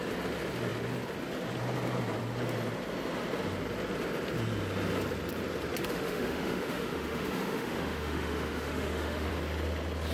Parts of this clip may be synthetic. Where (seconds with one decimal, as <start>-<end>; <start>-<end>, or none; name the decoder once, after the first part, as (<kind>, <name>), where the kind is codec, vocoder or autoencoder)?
5.8-9.3 (autoencoder, DAC-VAE)